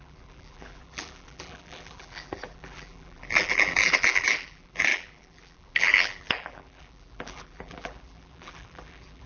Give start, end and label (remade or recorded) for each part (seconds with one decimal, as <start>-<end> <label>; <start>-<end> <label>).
0.0-9.3 remade